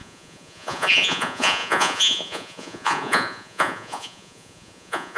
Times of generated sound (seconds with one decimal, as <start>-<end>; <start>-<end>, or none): 0.0-5.2